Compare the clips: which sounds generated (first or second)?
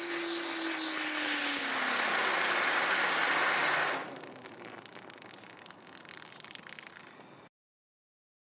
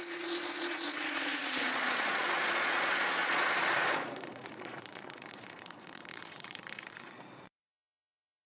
second